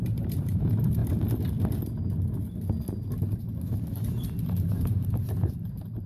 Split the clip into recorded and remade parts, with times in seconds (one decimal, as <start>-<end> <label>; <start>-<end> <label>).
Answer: 0.0-1.0 remade; 1.0-4.6 recorded; 4.6-6.1 remade